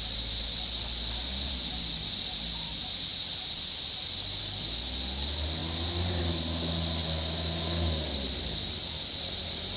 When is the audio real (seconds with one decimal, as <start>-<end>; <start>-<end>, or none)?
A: 0.0-9.8